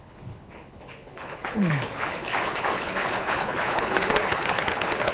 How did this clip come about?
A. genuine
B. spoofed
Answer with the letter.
B